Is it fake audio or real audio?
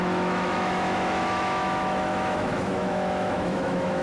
fake